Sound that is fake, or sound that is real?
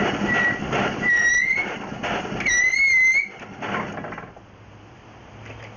real